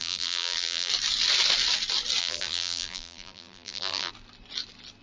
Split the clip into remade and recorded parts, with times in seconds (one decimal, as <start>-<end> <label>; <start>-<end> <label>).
0.0-0.9 remade; 0.9-2.2 recorded; 2.2-4.1 remade; 4.1-5.0 recorded